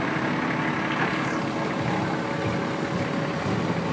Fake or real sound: real